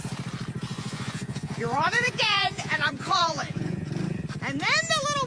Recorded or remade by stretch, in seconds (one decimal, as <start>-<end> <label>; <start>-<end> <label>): 0.0-0.7 recorded; 0.7-3.9 remade; 3.9-5.3 recorded